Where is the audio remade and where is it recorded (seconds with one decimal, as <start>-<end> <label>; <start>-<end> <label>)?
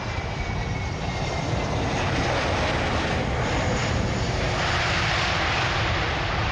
0.0-3.8 recorded; 3.8-5.5 remade; 5.5-6.5 recorded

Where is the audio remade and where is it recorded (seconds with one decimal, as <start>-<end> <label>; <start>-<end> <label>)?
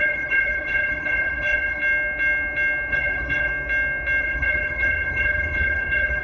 0.0-1.8 remade; 1.8-2.9 recorded; 2.9-3.5 remade; 3.5-4.2 recorded; 4.2-6.2 remade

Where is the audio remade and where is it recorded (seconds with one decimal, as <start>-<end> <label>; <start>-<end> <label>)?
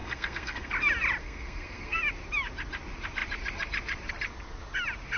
0.0-0.7 remade; 0.7-1.2 recorded; 1.2-2.0 remade; 2.0-5.2 recorded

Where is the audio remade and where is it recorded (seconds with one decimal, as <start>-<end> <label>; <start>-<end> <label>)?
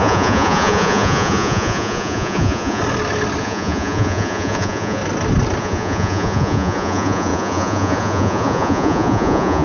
0.0-2.8 remade; 2.8-3.4 recorded; 3.4-5.0 remade; 5.0-5.6 recorded; 5.6-9.6 remade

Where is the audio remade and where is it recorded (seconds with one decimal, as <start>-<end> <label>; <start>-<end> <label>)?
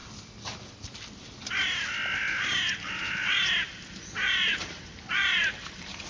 0.0-6.1 recorded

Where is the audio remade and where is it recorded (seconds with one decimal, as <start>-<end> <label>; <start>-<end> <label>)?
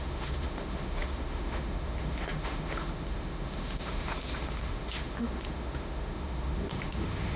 0.0-7.4 remade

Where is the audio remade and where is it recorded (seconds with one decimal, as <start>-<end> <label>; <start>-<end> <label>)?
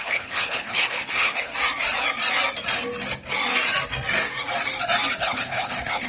0.0-1.5 remade; 1.5-5.2 recorded; 5.2-6.1 remade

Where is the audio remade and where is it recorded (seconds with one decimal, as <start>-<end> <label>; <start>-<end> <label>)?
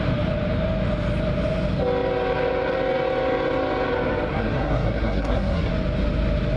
0.0-4.3 recorded; 4.3-5.7 remade; 5.7-6.6 recorded